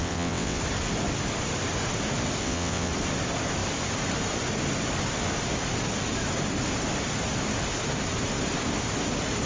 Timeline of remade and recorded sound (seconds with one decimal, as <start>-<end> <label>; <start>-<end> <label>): 0.0-0.6 remade; 0.6-2.4 recorded; 2.4-2.9 remade; 2.9-9.5 recorded